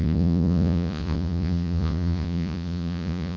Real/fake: fake